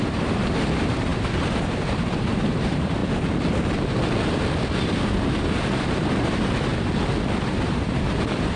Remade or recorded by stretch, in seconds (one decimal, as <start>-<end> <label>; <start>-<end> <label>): 0.0-3.0 remade; 3.0-5.6 recorded; 5.6-6.7 remade; 6.7-7.4 recorded; 7.4-8.6 remade